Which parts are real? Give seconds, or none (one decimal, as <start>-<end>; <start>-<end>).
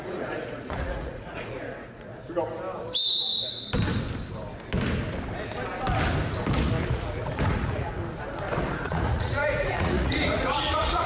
2.1-6.9; 8.0-8.8